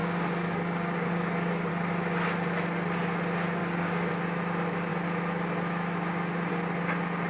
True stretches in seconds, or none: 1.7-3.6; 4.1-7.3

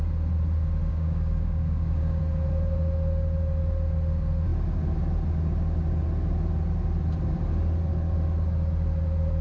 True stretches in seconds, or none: 0.0-0.9; 2.2-9.4

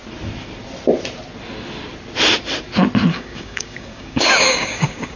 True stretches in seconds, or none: 0.0-3.1